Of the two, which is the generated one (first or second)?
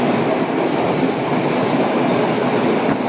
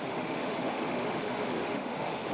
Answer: second